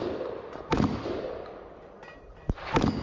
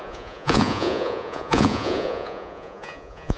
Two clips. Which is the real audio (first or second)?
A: first